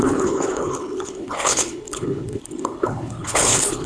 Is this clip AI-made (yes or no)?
yes